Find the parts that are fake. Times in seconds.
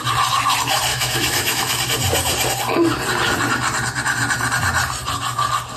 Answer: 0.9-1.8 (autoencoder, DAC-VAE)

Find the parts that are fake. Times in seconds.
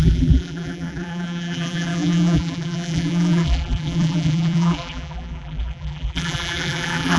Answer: 0.0-7.2 (vocoder, BigVGAN v2)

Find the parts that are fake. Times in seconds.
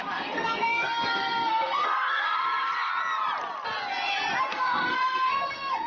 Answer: 0.0-2.9 (codec, SNAC); 4.4-5.9